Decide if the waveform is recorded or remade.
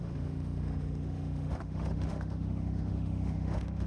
remade